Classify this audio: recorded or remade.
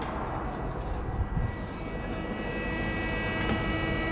recorded